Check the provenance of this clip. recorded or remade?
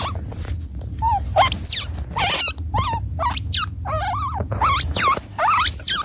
recorded